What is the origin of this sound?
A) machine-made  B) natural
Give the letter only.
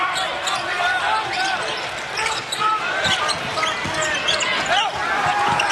B